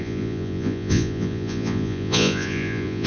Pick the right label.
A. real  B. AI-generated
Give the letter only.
B